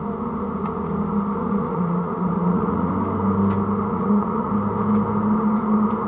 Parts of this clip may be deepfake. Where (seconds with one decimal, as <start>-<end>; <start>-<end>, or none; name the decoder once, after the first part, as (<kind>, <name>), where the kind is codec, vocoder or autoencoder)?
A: 1.4-2.9 (vocoder, Vocos); 3.9-4.5